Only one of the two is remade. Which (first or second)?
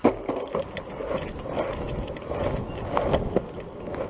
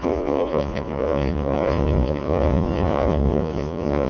second